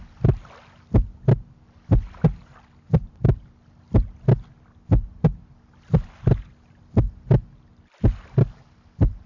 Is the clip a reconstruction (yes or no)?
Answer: no